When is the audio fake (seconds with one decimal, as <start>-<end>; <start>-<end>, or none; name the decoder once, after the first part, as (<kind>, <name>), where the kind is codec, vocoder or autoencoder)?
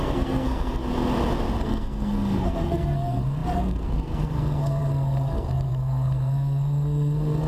0.0-0.8 (codec, SNAC); 1.6-7.5